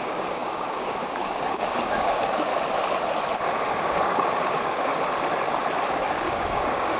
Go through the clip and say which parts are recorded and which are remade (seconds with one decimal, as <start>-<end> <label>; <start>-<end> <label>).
0.0-2.5 remade; 2.5-3.8 recorded; 3.8-4.9 remade; 4.9-5.9 recorded; 5.9-7.0 remade